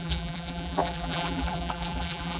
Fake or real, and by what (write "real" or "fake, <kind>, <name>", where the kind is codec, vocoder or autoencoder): fake, vocoder, BigVGAN v2